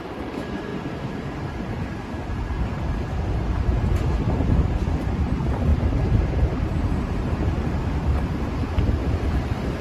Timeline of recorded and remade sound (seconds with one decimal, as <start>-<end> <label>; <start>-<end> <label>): 0.0-0.7 remade; 0.7-3.7 recorded; 3.7-5.7 remade; 5.7-6.3 recorded; 6.3-9.8 remade